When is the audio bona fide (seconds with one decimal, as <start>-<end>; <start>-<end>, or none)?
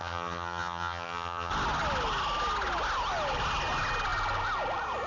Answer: 1.5-5.1